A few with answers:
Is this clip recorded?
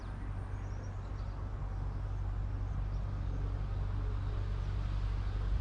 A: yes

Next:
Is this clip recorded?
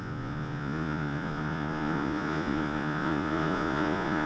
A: no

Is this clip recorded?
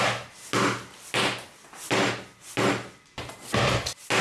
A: yes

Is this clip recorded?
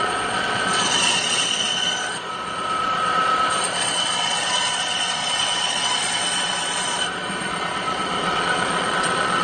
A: no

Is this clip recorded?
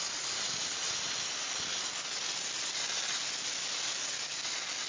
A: yes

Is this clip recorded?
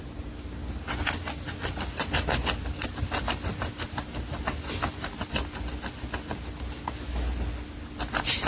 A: yes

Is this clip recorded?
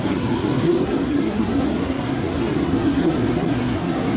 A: no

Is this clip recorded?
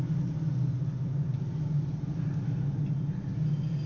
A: yes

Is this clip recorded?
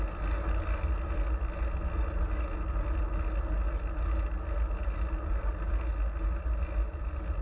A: yes